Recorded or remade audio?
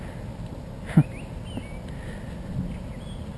recorded